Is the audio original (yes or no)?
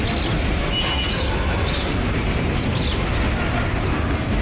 yes